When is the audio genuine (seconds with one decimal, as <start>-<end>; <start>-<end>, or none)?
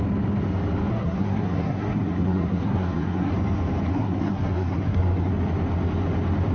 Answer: 0.0-0.9; 3.3-3.9; 5.3-6.5